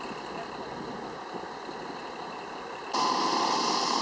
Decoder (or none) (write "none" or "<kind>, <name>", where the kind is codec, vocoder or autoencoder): none